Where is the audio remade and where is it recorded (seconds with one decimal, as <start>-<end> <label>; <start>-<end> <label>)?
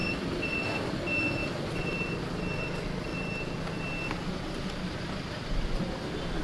0.0-6.4 recorded